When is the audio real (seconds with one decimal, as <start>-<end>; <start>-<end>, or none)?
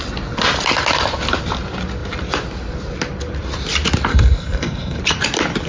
0.0-4.1; 5.0-5.7